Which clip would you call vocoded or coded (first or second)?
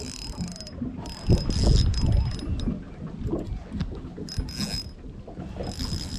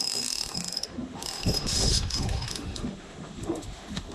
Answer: second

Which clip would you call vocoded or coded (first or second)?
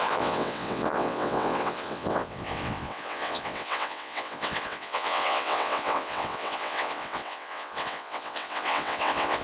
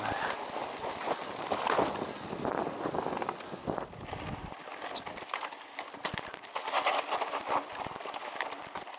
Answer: first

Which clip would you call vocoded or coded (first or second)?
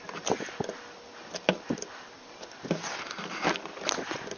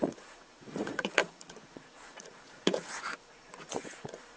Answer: second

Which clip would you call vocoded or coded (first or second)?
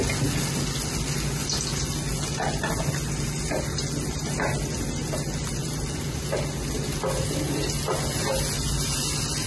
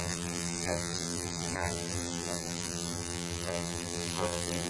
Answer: second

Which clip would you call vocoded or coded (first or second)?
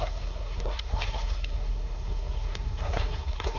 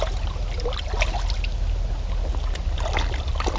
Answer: first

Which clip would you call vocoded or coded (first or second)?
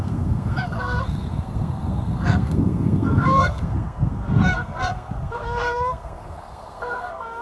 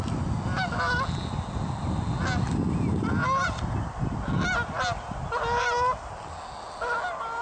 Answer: first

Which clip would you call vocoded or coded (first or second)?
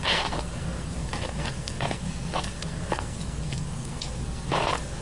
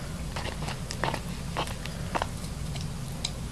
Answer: first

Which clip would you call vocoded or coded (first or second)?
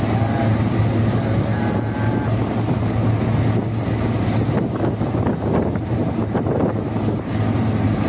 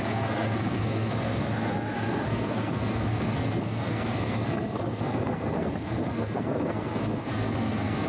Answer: second